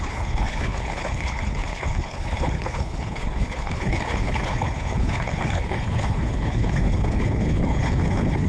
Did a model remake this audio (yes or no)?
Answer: yes